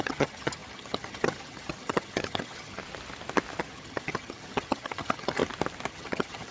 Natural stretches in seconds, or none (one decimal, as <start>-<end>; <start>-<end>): 2.8-3.6; 5.4-5.9